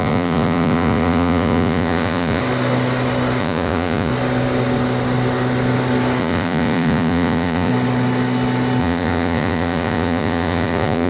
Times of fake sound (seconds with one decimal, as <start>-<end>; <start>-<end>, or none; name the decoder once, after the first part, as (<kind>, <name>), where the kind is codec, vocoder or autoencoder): 0.0-2.4 (vocoder, Vocos); 3.4-4.1; 6.2-7.7; 8.8-11.1